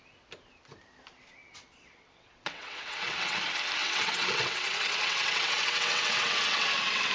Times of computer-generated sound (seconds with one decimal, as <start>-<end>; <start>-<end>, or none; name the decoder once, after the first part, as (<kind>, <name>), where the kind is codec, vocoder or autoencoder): 1.4-3.4 (vocoder, WaveNeXt); 3.8-7.1